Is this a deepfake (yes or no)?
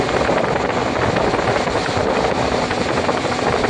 no